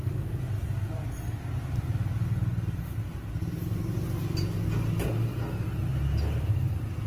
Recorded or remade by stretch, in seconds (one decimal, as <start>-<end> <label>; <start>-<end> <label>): 0.0-0.6 recorded; 0.6-1.9 remade; 1.9-7.1 recorded

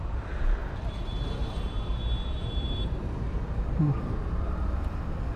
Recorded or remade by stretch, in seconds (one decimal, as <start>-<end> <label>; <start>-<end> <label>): 0.0-5.4 remade

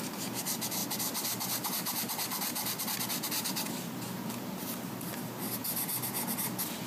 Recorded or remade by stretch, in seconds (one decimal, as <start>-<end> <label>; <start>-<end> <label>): 0.0-6.9 recorded

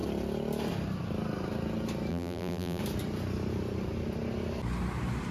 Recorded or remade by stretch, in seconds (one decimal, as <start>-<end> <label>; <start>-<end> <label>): 0.0-2.1 recorded; 2.1-2.8 remade; 2.8-5.3 recorded

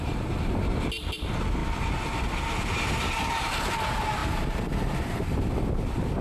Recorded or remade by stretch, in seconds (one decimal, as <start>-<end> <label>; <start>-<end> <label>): 0.0-1.6 remade; 1.6-3.6 recorded; 3.6-4.2 remade; 4.2-4.7 recorded; 4.7-6.2 remade

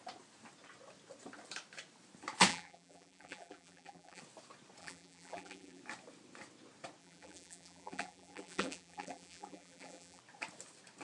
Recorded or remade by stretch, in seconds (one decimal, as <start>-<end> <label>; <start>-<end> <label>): 0.0-2.5 recorded; 2.5-4.2 remade; 4.2-4.8 recorded; 4.8-5.8 remade; 5.8-7.0 recorded; 7.0-10.2 remade; 10.2-11.0 recorded

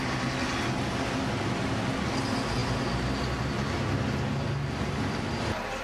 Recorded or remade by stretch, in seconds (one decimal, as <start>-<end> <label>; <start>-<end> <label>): 0.0-5.8 recorded

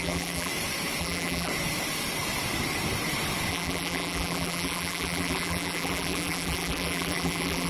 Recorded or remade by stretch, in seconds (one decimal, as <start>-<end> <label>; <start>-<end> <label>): 0.0-0.5 remade; 0.5-1.0 recorded; 1.0-1.5 remade; 1.5-3.5 recorded; 3.5-7.7 remade